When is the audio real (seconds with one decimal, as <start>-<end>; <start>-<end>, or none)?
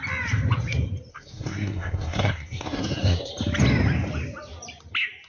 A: 0.0-1.1; 3.3-5.3